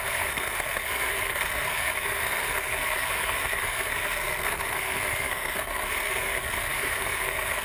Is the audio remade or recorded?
remade